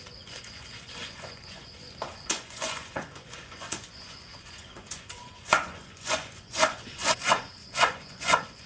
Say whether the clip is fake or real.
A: fake